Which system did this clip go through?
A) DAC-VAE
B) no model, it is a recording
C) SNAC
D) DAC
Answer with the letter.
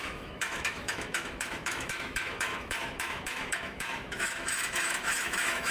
A